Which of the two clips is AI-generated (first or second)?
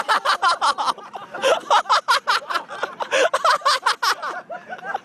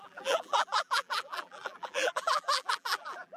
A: second